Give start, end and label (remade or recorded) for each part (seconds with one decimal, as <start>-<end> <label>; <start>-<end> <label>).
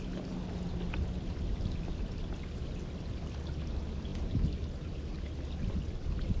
0.0-6.4 recorded